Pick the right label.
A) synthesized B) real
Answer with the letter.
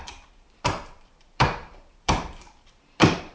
A